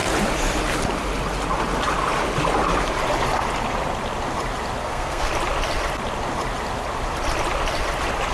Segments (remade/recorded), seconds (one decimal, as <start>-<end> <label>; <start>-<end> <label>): 0.0-4.8 recorded; 4.8-5.3 remade; 5.3-8.3 recorded